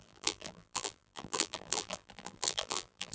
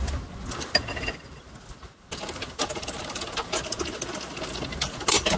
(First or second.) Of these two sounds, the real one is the second